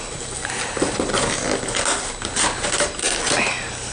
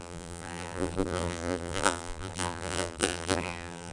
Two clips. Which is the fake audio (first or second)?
second